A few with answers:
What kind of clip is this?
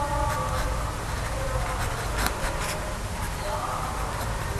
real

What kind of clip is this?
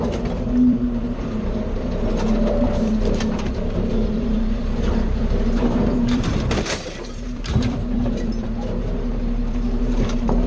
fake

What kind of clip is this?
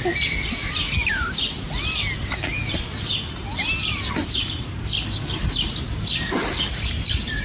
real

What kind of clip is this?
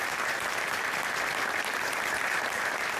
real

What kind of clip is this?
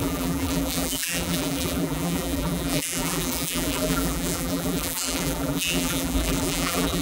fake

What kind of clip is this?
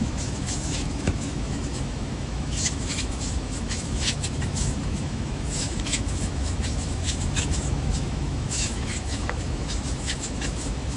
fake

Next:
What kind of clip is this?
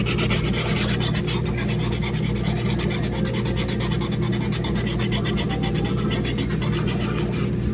real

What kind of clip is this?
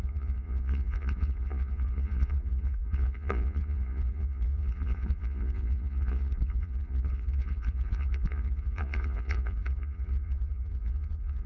fake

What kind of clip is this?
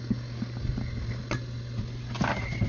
real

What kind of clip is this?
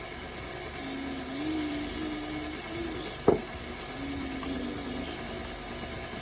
real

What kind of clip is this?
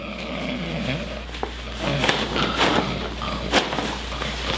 real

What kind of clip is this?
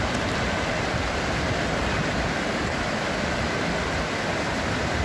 real